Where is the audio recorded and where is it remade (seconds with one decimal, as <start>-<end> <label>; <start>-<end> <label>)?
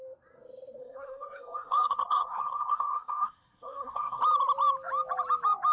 0.0-0.8 recorded; 0.8-4.2 remade; 4.2-5.7 recorded